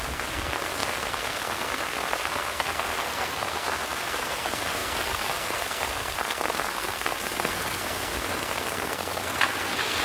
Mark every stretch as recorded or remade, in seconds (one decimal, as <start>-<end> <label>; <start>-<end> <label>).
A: 0.0-10.0 remade